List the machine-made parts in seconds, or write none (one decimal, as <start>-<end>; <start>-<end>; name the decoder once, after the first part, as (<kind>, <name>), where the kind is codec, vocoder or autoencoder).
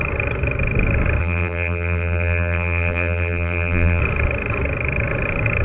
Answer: 1.2-4.0 (vocoder, BigVGAN v2)